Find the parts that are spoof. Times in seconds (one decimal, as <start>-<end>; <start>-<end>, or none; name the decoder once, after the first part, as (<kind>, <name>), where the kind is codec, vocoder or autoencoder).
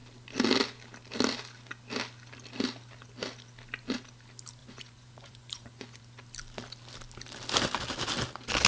4.6-6.0 (vocoder, Vocos)